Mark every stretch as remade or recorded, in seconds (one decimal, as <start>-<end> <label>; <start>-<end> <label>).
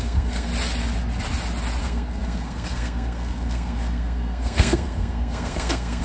0.0-0.5 remade; 0.5-1.8 recorded; 1.8-6.0 remade